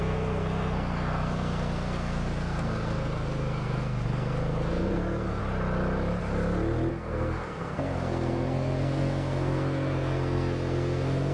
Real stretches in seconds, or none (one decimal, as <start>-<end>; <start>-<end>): 5.4-6.9